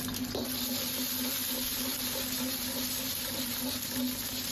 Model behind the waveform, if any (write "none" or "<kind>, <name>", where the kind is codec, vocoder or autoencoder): none